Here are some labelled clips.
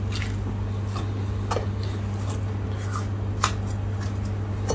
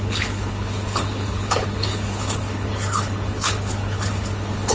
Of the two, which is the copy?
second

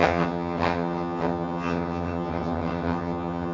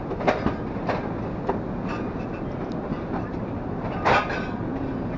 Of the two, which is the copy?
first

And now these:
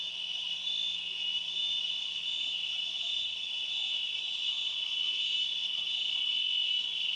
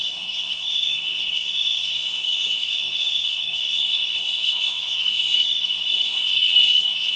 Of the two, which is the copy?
second